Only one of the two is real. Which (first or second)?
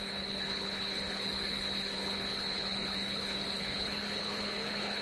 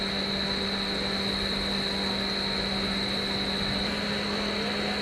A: second